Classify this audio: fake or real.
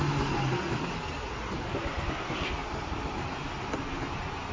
real